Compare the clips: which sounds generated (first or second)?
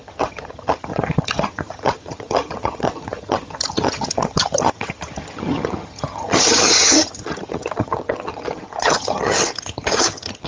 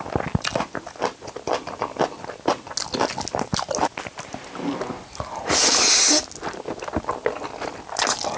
first